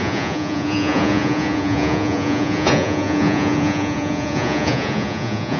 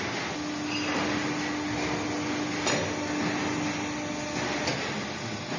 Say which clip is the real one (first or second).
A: second